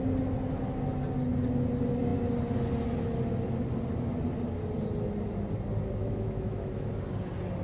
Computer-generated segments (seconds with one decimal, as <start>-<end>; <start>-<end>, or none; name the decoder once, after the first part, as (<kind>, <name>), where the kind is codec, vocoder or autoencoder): 6.0-6.9 (autoencoder, DAC-VAE)